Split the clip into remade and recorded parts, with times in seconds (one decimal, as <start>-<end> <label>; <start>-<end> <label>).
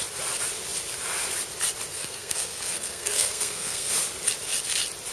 0.0-1.9 recorded; 1.9-3.9 remade; 3.9-5.1 recorded